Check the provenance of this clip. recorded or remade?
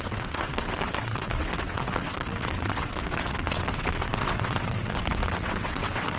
remade